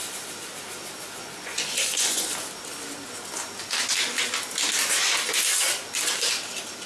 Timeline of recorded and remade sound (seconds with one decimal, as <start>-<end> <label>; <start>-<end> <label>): 0.0-1.2 recorded; 1.2-2.3 remade; 2.3-6.9 recorded

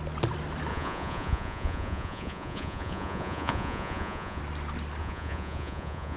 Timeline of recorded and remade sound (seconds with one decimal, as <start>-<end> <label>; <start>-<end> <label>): 0.0-0.7 recorded; 0.7-4.4 remade; 4.4-5.0 recorded; 5.0-6.2 remade

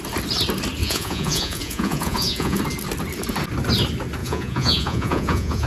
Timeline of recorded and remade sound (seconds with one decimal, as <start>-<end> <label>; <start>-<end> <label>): 0.0-0.8 recorded; 0.8-2.6 remade; 2.6-4.2 recorded; 4.2-5.7 remade

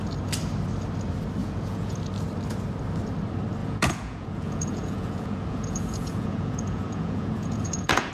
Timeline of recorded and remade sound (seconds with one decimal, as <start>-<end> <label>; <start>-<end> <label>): 0.0-1.4 recorded; 1.4-2.0 remade; 2.0-3.6 recorded; 3.6-8.1 remade

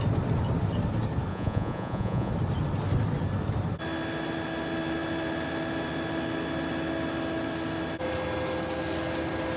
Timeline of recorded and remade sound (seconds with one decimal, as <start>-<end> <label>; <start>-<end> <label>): 0.0-1.3 recorded; 1.3-2.3 remade; 2.3-9.6 recorded

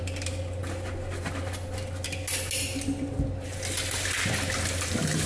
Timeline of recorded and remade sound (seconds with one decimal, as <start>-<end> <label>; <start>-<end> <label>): 0.0-5.3 recorded

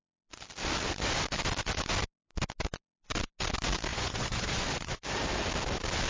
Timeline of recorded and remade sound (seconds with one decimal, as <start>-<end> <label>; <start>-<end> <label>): 0.0-3.9 recorded; 3.9-5.0 remade; 5.0-6.1 recorded

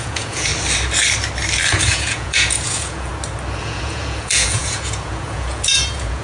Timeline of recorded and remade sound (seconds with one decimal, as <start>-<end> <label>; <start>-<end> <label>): 0.0-0.5 remade; 0.5-1.7 recorded; 1.7-3.1 remade; 3.1-3.6 recorded; 3.6-6.2 remade